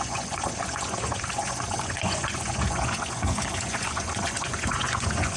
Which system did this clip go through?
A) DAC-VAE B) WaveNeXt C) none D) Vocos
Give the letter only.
D